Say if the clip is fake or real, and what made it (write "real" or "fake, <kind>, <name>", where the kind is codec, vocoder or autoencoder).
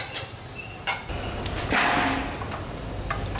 real